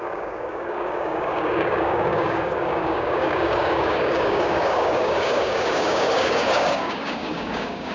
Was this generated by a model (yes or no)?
yes